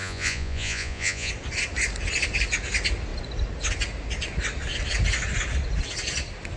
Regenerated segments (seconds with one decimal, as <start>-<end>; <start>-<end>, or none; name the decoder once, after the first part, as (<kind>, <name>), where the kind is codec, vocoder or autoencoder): 0.0-1.3 (vocoder, Vocos)